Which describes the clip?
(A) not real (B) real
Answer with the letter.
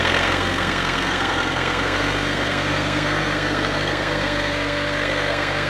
A